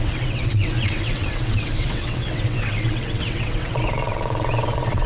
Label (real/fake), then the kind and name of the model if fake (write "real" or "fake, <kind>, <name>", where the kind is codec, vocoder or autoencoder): fake, vocoder, WaveNeXt